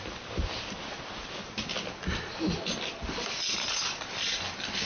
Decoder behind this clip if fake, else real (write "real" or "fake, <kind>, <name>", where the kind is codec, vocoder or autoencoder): real